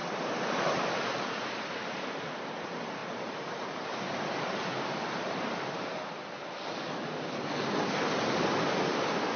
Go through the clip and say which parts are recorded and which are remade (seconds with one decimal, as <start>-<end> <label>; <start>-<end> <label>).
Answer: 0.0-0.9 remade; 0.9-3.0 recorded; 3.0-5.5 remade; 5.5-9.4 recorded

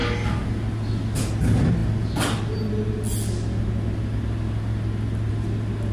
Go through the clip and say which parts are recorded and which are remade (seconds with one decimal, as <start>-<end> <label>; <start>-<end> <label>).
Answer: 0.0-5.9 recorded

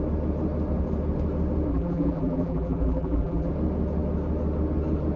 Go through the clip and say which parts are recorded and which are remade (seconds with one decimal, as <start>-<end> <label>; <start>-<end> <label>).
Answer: 0.0-1.7 recorded; 1.7-3.5 remade; 3.5-5.2 recorded

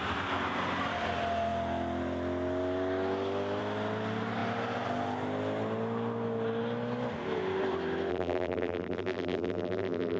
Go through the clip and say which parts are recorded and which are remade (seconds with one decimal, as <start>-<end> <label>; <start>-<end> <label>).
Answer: 0.0-8.1 recorded; 8.1-10.2 remade

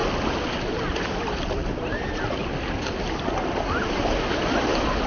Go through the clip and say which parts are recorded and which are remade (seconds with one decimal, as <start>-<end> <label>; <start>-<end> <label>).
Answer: 0.0-5.1 recorded

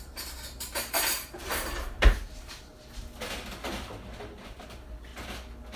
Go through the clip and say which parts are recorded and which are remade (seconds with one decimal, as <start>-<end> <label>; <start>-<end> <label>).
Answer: 0.0-2.7 remade; 2.7-4.4 recorded; 4.4-5.1 remade; 5.1-5.8 recorded

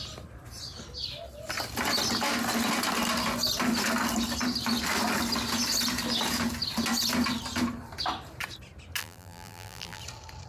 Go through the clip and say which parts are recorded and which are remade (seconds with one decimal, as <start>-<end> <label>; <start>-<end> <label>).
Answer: 0.0-9.0 recorded; 9.0-10.0 remade; 10.0-10.5 recorded